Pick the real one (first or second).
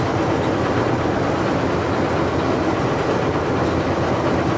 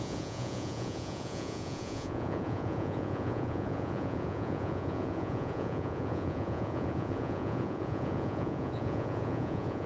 first